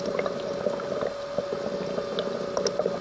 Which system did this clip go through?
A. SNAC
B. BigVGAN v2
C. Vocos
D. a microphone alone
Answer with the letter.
D